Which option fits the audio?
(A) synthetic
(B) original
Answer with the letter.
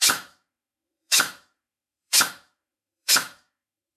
A